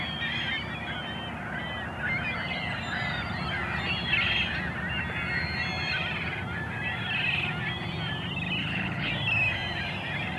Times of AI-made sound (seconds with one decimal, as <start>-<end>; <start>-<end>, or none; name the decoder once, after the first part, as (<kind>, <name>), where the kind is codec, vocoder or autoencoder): 8.6-9.1 (codec, HILCodec)